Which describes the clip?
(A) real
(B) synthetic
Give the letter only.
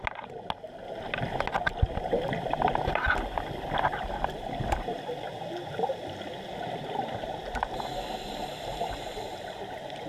A